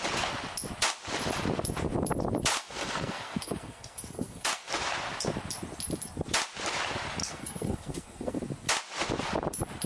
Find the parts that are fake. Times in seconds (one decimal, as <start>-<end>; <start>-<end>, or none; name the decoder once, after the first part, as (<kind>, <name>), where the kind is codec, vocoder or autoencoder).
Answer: 2.5-4.7 (codec, SNAC); 7.2-8.4